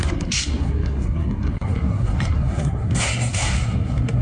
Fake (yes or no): yes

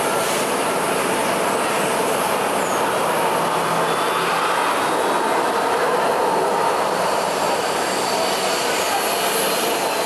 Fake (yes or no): no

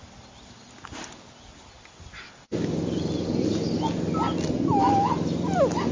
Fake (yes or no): no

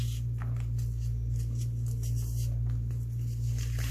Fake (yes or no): no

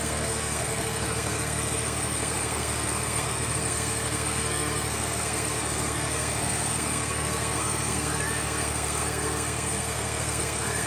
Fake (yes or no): yes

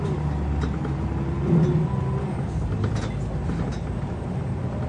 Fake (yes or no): no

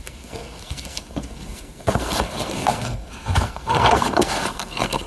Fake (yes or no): yes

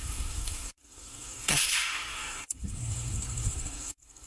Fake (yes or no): yes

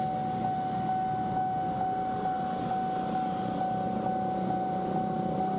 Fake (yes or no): no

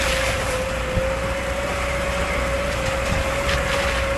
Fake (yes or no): no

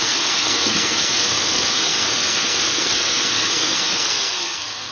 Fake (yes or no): yes